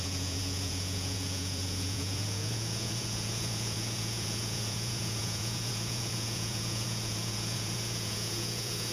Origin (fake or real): fake